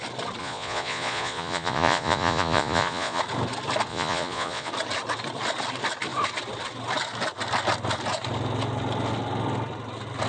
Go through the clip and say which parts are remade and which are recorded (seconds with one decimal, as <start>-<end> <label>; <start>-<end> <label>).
0.0-0.4 recorded; 0.4-3.2 remade; 3.2-3.9 recorded; 3.9-4.7 remade; 4.7-10.3 recorded